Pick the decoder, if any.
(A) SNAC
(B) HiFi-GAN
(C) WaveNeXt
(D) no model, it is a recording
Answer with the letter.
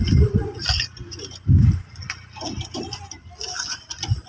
D